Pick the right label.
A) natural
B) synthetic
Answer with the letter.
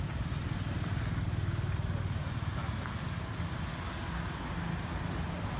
A